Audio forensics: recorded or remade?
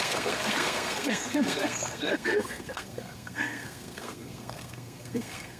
remade